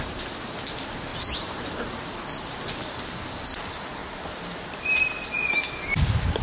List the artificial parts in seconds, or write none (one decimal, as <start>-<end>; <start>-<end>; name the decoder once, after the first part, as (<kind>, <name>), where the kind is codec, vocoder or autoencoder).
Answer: 1.1-2.0 (vocoder, BigVGAN v2); 4.0-5.0